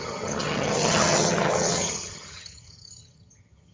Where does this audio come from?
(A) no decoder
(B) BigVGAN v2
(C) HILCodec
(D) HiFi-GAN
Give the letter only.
D